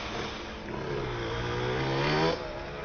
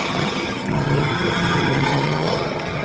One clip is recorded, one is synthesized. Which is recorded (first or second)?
first